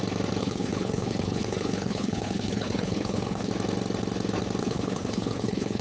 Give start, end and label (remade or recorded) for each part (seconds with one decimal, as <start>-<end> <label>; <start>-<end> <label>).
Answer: 0.0-0.4 recorded; 0.4-3.5 remade; 3.5-4.6 recorded; 4.6-5.8 remade